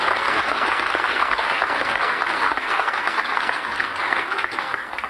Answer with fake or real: fake